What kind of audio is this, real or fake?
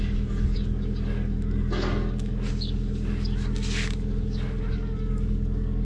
fake